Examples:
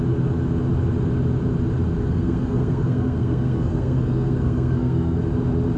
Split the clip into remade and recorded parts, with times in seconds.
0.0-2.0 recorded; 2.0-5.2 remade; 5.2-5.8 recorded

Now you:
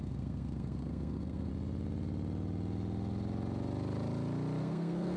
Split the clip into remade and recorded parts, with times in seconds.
0.0-1.5 remade; 1.5-4.6 recorded; 4.6-5.2 remade

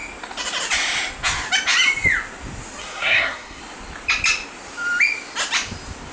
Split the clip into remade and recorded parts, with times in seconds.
0.0-2.8 recorded; 2.8-3.6 remade; 3.6-6.1 recorded

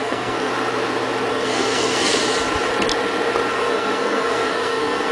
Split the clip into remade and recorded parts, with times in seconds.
0.0-0.5 remade; 0.5-1.3 recorded; 1.3-2.2 remade; 2.2-3.5 recorded; 3.5-5.1 remade